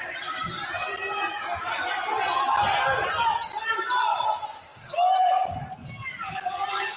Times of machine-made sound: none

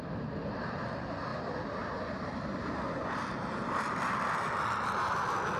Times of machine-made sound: none

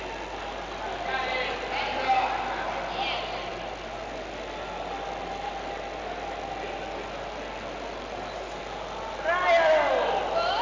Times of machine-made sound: none

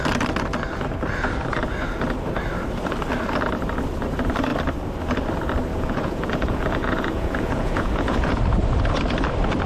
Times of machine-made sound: 5.7-8.4 (vocoder, Vocos)

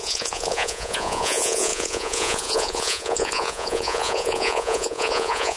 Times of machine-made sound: 0.0-5.6 (vocoder, Vocos)

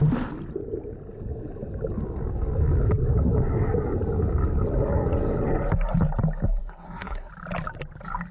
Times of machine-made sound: 6.6-7.3 (codec, SNAC)

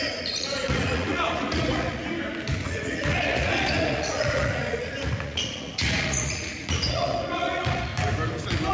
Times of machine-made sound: 0.0-2.0 (vocoder, Vocos); 2.6-7.9